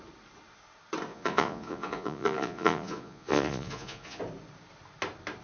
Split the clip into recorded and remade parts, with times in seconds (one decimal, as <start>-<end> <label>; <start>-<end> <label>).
0.0-1.1 recorded; 1.1-4.2 remade; 4.2-5.4 recorded